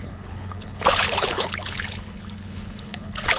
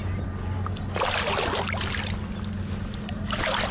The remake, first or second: first